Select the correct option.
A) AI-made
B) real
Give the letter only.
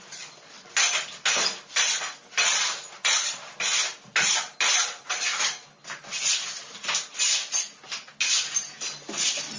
B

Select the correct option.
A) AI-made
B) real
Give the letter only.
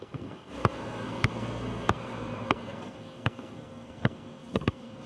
A